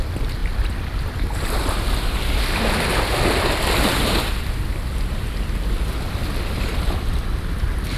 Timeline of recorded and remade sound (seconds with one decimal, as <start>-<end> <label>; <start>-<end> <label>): 0.0-8.0 recorded